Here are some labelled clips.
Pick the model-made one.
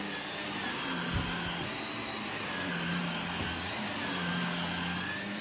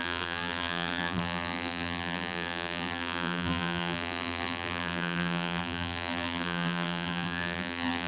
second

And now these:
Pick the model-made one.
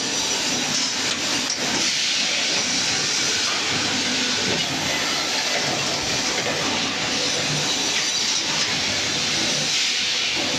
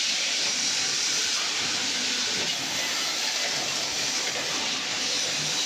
second